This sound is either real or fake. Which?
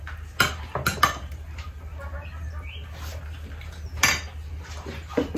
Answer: real